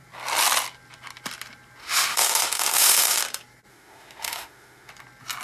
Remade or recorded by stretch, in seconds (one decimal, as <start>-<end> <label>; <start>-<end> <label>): 0.0-1.8 recorded; 1.8-3.2 remade; 3.2-3.7 recorded; 3.7-4.9 remade; 4.9-5.4 recorded